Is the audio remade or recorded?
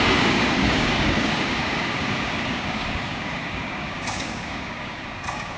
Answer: remade